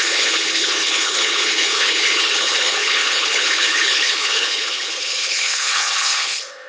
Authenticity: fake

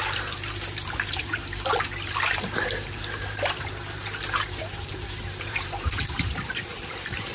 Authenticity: fake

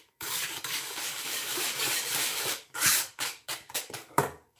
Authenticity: fake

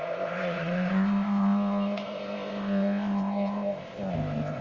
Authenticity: fake